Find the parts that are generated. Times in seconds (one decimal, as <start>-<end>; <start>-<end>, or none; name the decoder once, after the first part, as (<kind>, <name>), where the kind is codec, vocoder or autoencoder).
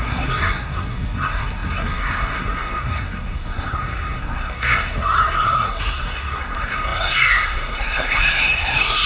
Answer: 0.0-9.1 (codec, SNAC)